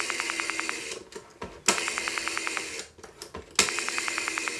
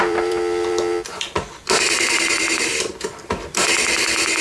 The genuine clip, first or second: first